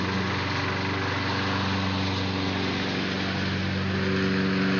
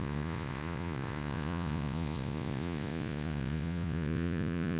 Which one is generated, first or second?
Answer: second